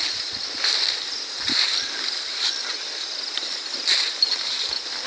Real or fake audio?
fake